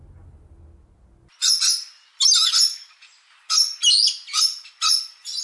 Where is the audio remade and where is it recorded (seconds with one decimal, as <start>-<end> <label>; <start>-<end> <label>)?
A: 0.0-5.4 recorded